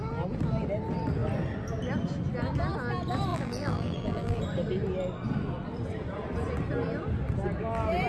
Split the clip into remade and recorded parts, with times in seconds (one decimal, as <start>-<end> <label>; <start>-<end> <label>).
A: 0.0-3.3 recorded; 3.3-4.4 remade; 4.4-8.1 recorded